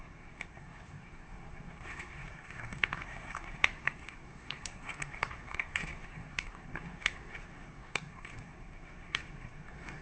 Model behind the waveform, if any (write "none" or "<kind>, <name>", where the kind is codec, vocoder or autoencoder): codec, SNAC